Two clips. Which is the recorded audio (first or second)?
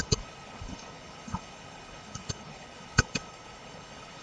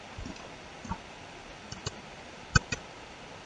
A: second